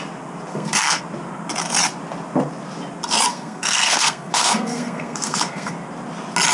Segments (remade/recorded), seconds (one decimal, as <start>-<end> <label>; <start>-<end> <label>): 0.0-0.5 recorded; 0.5-1.0 remade; 1.0-3.3 recorded; 3.3-5.7 remade; 5.7-6.5 recorded